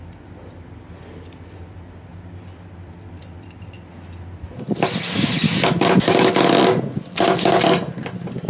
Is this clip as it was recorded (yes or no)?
yes